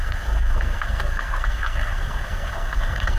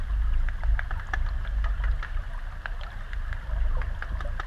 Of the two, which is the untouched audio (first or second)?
second